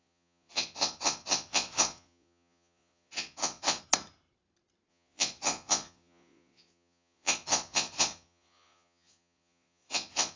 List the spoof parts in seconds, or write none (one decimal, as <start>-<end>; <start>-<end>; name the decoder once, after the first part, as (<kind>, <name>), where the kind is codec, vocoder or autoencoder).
0.0-3.8 (vocoder, Vocos); 4.9-10.4